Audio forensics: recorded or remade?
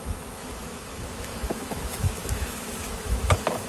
remade